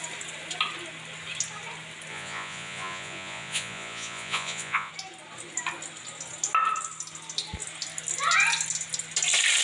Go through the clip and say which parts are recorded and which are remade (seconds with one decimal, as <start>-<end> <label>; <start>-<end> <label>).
0.0-2.1 recorded; 2.1-4.9 remade; 4.9-9.6 recorded